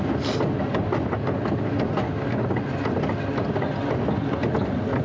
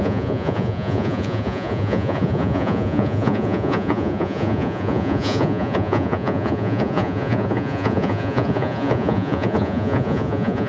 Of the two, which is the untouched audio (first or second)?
first